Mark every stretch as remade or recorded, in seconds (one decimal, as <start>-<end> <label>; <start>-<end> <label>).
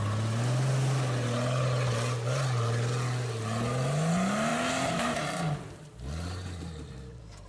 0.0-4.5 recorded; 4.5-7.5 remade